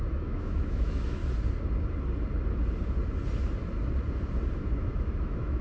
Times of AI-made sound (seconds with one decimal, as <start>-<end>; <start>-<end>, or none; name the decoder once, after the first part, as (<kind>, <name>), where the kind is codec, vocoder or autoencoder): 0.0-1.2 (autoencoder, DAC-VAE); 4.6-5.6